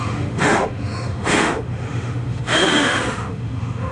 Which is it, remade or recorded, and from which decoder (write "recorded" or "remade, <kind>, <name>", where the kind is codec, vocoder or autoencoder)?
remade, autoencoder, DAC-VAE